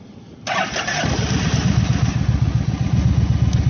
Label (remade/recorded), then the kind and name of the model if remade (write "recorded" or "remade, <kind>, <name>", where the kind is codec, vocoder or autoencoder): recorded